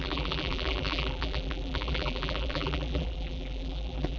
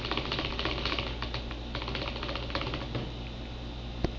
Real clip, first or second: second